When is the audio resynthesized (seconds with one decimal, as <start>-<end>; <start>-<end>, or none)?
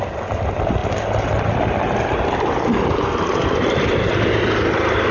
none